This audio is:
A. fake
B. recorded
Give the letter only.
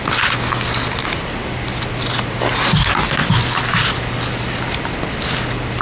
B